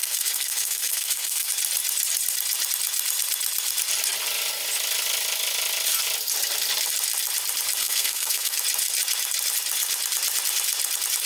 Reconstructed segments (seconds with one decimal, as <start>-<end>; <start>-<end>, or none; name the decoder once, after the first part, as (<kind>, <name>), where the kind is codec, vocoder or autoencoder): 0.0-1.5 (codec, SNAC); 7.8-8.6